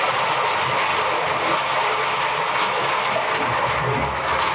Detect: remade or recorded recorded